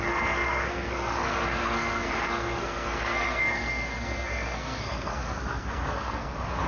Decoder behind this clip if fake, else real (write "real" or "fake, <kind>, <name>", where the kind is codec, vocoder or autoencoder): fake, codec, SNAC